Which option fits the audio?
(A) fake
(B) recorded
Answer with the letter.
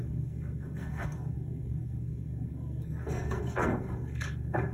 A